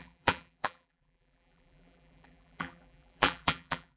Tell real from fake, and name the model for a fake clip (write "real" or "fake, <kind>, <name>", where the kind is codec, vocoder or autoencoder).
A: fake, vocoder, BigVGAN v2